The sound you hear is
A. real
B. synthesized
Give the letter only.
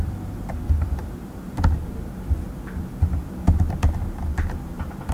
A